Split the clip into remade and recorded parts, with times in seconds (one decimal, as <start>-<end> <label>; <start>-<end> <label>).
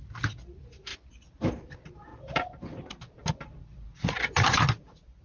0.0-0.9 remade; 0.9-1.5 recorded; 1.5-5.2 remade